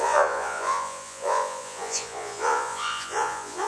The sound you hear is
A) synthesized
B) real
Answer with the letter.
A